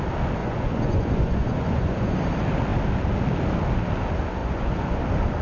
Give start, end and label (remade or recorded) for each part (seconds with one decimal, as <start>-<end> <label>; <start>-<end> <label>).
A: 0.0-0.4 recorded; 0.4-2.2 remade; 2.2-4.4 recorded; 4.4-5.0 remade; 5.0-5.4 recorded